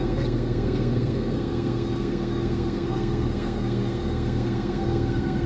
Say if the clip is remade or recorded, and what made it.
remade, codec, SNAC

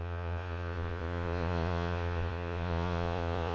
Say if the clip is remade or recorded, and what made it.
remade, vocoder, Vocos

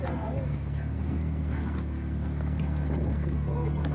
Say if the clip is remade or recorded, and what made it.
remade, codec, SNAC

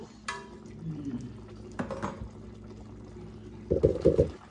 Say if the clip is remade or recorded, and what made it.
recorded